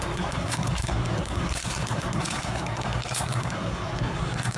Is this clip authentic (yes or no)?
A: no